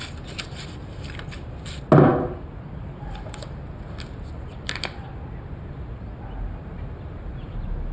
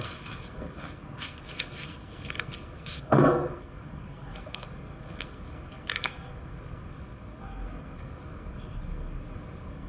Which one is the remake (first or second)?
second